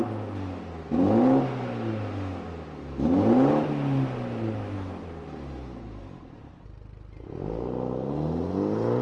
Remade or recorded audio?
recorded